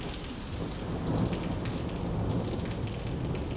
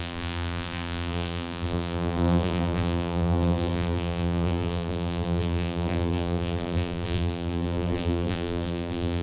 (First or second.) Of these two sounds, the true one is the first